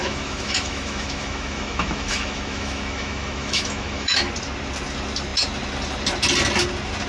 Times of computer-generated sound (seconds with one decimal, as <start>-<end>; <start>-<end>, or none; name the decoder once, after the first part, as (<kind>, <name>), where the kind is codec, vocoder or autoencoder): 0.0-4.3 (autoencoder, DAC-VAE)